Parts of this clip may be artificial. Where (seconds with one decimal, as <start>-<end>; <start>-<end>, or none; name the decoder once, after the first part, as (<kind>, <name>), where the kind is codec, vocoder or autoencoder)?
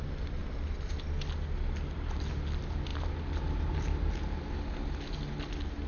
none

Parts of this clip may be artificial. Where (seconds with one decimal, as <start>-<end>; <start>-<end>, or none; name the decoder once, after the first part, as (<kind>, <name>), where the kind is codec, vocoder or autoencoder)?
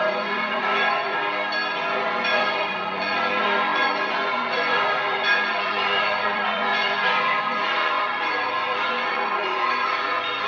0.0-1.2 (vocoder, Vocos); 1.7-10.5